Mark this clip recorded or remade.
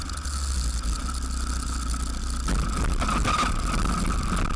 recorded